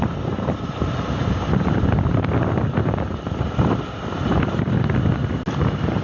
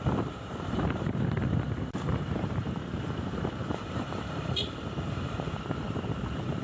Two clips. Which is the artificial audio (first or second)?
second